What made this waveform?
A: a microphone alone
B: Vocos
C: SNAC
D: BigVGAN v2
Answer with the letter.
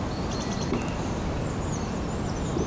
A